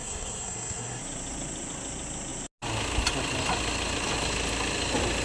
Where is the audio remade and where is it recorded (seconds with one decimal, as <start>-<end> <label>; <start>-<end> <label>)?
0.0-1.0 remade; 1.0-5.2 recorded